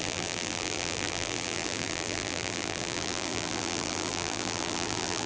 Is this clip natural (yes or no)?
no